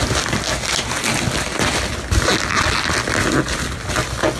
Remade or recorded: recorded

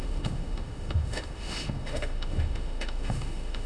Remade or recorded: remade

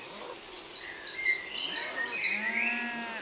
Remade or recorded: recorded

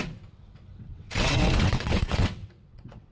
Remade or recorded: remade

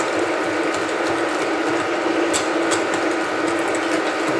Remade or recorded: recorded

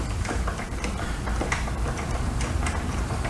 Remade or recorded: remade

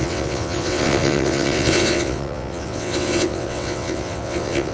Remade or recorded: remade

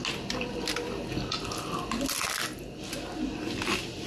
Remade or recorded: recorded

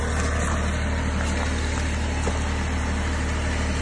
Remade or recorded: recorded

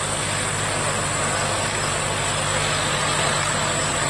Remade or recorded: recorded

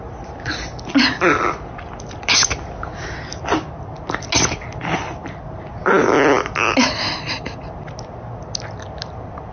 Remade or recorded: recorded